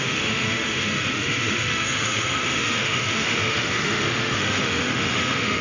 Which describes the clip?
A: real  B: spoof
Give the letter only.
B